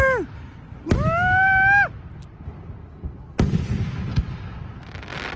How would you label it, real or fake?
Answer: real